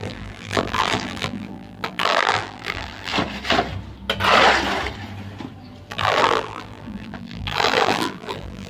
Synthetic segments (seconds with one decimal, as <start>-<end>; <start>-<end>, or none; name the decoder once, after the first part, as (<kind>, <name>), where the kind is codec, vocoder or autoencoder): 0.0-3.1 (vocoder, BigVGAN v2); 5.9-8.7